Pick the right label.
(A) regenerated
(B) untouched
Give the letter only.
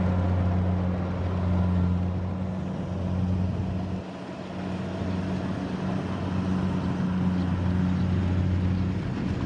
B